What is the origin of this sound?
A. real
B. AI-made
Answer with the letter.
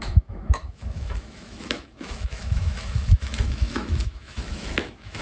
B